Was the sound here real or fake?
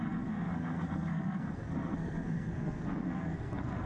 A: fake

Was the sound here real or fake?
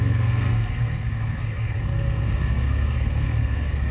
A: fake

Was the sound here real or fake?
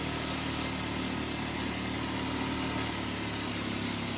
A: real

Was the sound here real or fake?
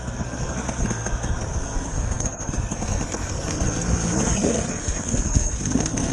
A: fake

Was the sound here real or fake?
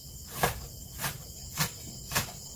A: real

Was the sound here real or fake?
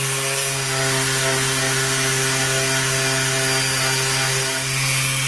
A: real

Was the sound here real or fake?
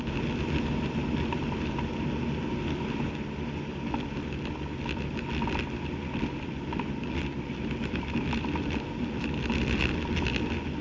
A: real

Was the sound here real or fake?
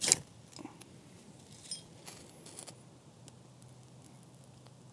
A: real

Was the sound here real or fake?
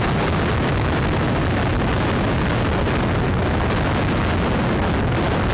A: real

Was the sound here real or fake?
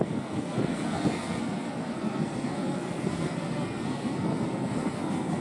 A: fake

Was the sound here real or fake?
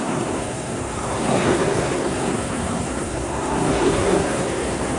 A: fake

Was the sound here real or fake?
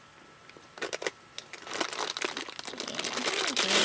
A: real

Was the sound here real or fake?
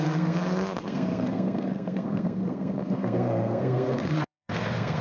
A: fake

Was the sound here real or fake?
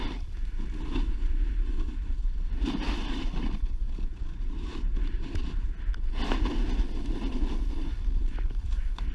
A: real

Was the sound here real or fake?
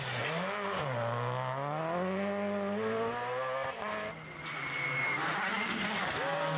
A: real